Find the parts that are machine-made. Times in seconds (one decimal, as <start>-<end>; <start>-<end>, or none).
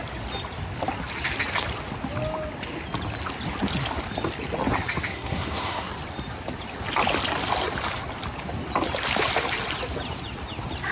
5.1-5.9